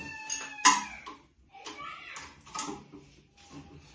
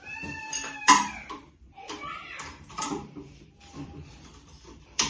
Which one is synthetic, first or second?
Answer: second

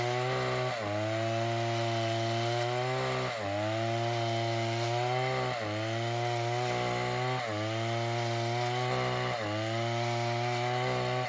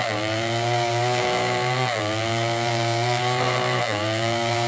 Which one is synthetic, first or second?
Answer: second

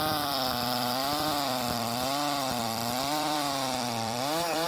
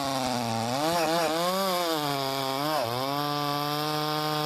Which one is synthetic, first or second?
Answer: first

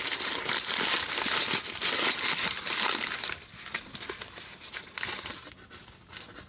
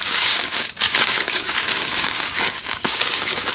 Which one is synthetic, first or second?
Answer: second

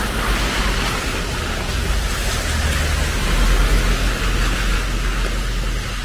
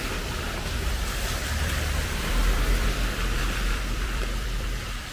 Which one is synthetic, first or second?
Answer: second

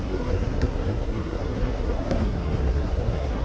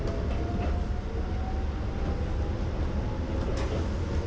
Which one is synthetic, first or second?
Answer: first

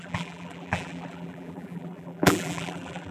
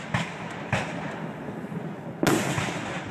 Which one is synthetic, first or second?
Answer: first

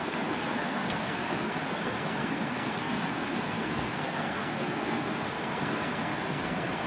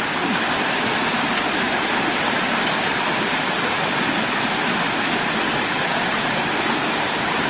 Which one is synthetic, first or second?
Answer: first